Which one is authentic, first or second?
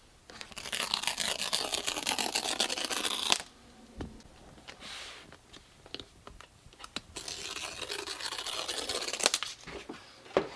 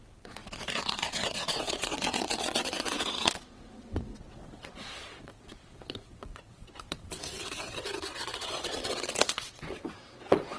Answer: first